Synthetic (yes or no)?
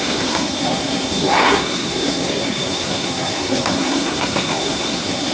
yes